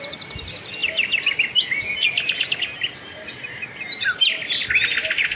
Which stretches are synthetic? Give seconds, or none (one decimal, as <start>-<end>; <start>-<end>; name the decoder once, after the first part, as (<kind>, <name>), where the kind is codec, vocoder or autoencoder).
none